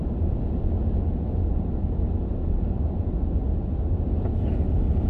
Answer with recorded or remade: recorded